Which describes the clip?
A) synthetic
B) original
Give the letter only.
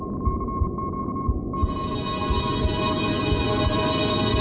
B